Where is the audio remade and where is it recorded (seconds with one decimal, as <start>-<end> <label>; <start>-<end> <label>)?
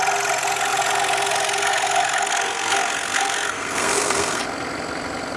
0.0-2.3 recorded; 2.3-4.4 remade; 4.4-5.4 recorded